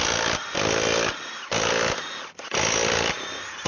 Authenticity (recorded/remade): recorded